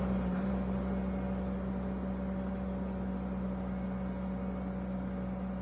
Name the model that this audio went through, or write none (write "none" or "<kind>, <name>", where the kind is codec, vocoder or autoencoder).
none